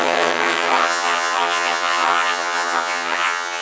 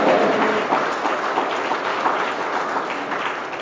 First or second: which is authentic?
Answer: second